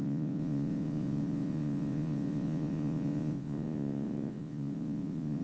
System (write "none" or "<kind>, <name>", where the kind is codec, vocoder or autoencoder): vocoder, Vocos